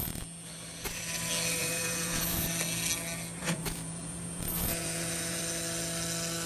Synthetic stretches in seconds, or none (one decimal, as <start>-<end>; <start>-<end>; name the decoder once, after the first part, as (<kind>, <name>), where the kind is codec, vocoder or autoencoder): 1.6-2.5 (vocoder, Vocos); 3.4-5.4